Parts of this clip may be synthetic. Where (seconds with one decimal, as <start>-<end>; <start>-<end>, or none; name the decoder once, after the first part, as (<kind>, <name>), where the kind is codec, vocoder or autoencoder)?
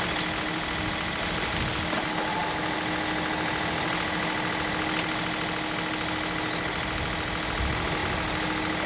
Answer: none